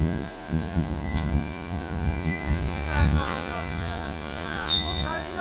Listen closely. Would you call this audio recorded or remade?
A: remade